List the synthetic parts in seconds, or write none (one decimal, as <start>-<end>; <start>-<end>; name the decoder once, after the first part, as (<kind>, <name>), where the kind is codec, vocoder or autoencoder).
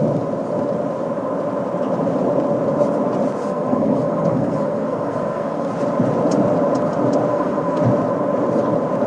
3.4-5.7 (codec, SNAC); 7.3-7.8